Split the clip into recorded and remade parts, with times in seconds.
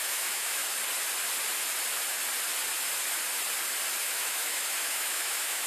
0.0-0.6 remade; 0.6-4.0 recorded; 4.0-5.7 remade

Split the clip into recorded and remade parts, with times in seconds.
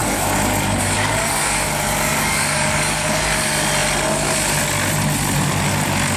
0.0-3.2 remade; 3.2-6.2 recorded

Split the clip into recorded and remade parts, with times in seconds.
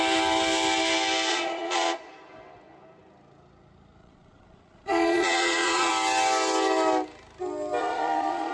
0.0-1.3 recorded; 1.3-2.1 remade; 2.1-4.0 recorded; 4.0-5.9 remade; 5.9-7.8 recorded; 7.8-8.5 remade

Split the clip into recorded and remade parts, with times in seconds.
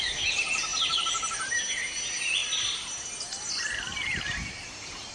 0.0-0.7 recorded; 0.7-1.5 remade; 1.5-3.9 recorded; 3.9-5.1 remade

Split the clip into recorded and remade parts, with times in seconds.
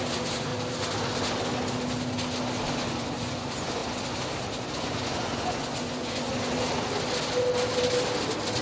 0.0-0.5 remade; 0.5-2.7 recorded; 2.7-3.8 remade; 3.8-4.8 recorded; 4.8-6.3 remade; 6.3-8.6 recorded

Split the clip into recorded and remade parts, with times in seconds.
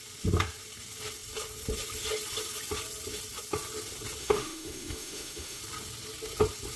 0.0-4.2 recorded; 4.2-5.6 remade; 5.6-6.8 recorded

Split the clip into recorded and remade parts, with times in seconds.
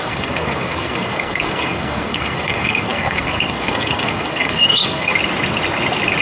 0.0-5.1 remade; 5.1-6.2 recorded